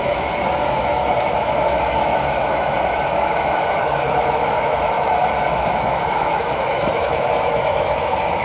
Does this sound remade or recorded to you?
remade